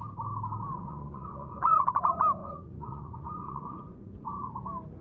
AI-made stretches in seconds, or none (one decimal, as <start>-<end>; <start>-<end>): 0.7-2.0; 2.4-4.5